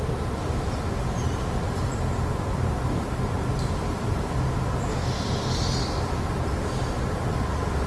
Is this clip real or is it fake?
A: real